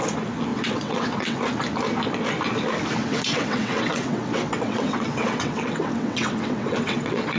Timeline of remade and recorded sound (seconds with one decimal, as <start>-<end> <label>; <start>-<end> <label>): 0.0-0.5 recorded; 0.5-1.4 remade; 1.4-3.0 recorded; 3.0-7.4 remade